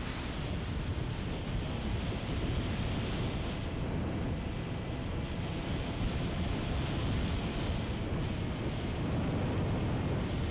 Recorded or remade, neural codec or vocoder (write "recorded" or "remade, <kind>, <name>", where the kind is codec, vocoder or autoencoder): recorded